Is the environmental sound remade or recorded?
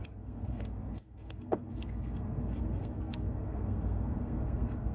remade